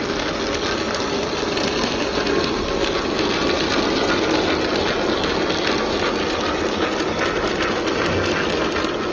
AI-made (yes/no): no